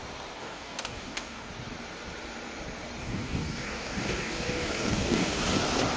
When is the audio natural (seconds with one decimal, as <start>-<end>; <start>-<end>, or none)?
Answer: 0.0-0.4; 1.5-3.0; 5.5-6.0